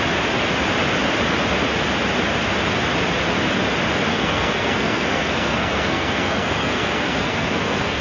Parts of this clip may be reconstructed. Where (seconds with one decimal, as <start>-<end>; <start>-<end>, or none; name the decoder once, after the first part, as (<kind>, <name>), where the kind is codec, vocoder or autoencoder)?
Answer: 4.1-8.0 (codec, SNAC)

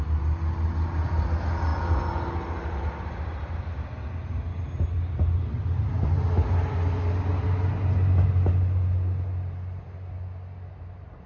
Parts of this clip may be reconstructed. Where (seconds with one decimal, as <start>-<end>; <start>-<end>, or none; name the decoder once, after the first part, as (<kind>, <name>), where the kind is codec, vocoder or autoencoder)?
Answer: none